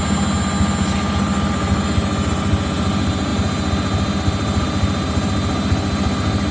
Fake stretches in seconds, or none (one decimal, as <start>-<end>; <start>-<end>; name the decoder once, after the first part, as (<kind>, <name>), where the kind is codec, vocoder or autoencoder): none